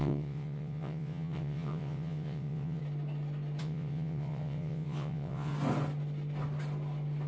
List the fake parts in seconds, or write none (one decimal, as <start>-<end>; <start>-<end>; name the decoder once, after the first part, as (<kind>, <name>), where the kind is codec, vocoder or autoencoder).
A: 0.0-2.8 (vocoder, WaveNeXt); 3.6-5.5